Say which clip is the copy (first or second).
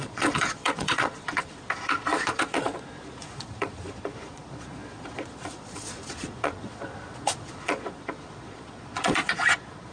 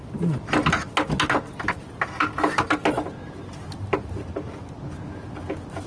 first